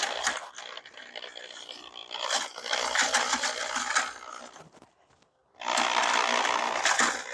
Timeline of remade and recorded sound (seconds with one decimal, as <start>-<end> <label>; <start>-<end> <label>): 0.0-7.3 recorded